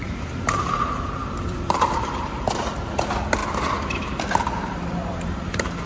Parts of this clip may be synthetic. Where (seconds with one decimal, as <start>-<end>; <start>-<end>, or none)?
0.0-3.4; 4.7-5.9